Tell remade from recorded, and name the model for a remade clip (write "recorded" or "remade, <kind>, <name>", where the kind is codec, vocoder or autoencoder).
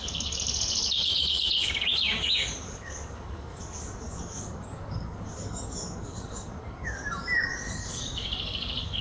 remade, codec, DAC